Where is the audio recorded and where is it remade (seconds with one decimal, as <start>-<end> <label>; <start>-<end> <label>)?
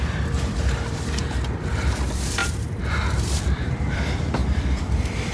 0.0-5.3 remade